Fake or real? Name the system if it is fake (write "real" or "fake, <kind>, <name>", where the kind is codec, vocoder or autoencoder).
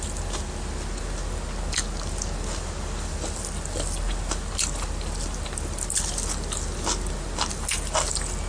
real